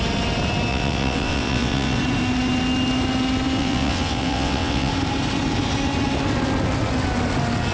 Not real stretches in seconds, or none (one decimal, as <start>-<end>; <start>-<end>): 0.7-2.0; 3.6-4.9